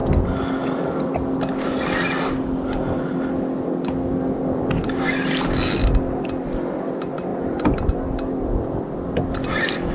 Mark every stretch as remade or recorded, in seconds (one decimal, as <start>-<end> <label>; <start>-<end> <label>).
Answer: 0.0-9.9 recorded